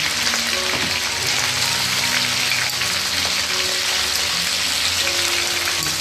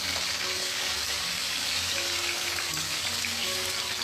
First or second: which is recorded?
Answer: first